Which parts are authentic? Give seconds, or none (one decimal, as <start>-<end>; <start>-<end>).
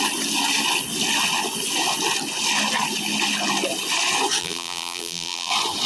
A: 0.0-4.4; 5.5-5.9